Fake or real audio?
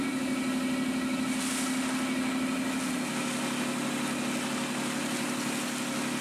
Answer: real